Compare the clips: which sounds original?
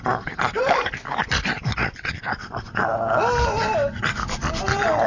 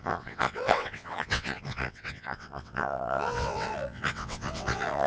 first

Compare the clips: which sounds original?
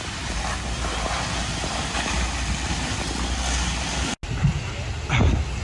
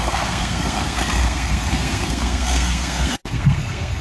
first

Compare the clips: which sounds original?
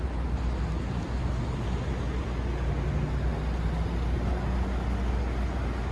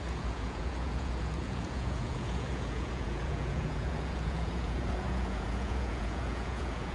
first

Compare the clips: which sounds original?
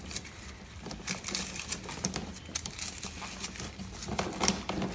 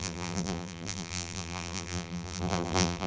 first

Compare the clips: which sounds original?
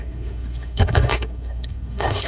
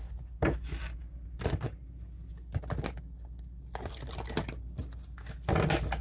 second